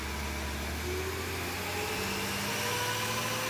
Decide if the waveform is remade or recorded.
recorded